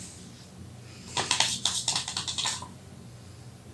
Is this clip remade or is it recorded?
recorded